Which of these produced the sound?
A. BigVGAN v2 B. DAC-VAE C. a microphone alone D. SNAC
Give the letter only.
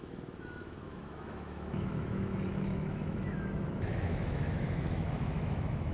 B